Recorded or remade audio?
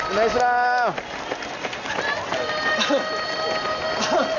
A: recorded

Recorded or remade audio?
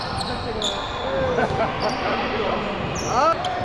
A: recorded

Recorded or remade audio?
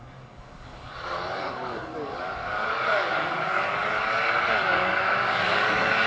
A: remade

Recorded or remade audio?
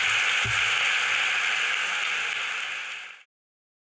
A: recorded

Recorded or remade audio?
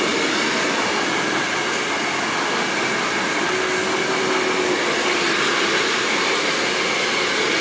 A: recorded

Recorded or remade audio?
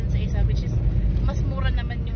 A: recorded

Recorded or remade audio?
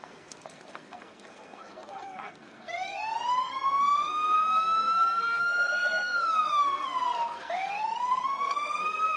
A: remade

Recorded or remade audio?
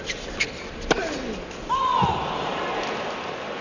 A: recorded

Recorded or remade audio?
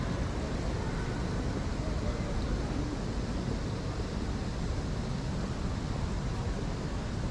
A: recorded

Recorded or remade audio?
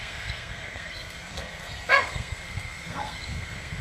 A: remade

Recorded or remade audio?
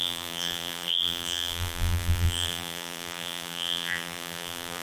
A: remade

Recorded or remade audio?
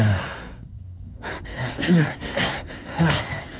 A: remade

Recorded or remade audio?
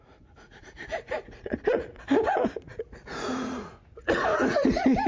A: remade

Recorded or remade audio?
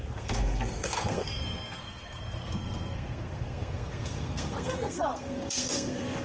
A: remade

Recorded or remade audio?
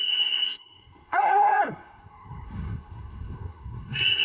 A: remade